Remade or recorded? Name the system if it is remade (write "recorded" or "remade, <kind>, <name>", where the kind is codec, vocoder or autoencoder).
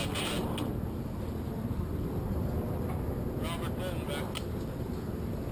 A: recorded